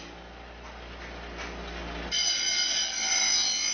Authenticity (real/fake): real